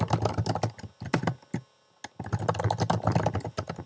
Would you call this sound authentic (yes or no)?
yes